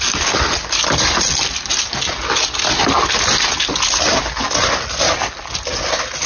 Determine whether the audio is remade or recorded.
recorded